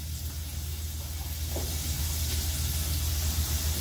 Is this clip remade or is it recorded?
recorded